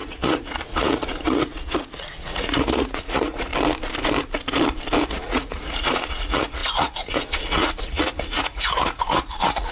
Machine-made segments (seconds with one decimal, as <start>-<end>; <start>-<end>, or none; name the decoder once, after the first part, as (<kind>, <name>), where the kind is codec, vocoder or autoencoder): 0.0-3.5 (vocoder, Vocos); 5.1-9.7